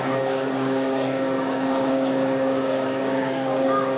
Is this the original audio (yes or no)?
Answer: no